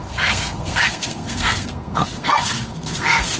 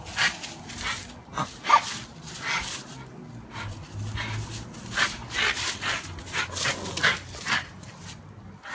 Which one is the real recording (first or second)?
second